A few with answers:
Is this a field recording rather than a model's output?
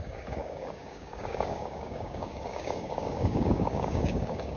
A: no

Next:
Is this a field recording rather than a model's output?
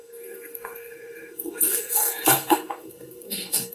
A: no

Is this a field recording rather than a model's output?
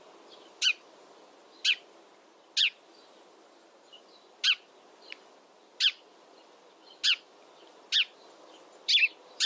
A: yes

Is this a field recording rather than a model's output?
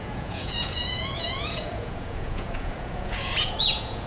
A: no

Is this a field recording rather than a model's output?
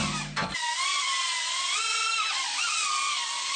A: yes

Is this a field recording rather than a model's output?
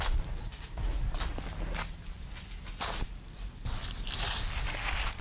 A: yes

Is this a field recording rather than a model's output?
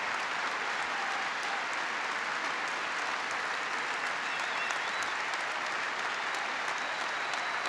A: yes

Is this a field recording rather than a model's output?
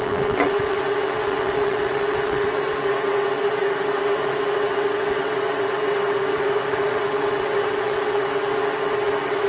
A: no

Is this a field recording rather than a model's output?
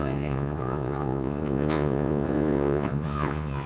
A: no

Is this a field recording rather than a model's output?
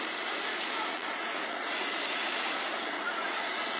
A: no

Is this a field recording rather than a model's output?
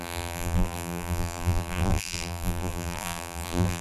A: no